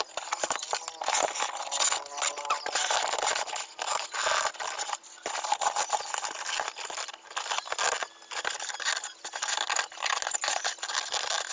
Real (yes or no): yes